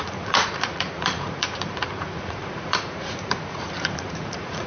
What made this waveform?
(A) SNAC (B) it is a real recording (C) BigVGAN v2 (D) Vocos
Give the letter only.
D